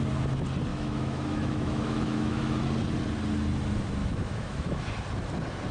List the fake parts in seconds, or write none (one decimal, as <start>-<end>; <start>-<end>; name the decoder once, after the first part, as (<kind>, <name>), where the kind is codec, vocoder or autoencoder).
0.7-2.6 (autoencoder, DAC-VAE); 4.0-4.8